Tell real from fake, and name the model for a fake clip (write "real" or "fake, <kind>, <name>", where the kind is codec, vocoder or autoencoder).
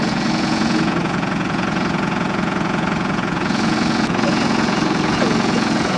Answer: fake, vocoder, Vocos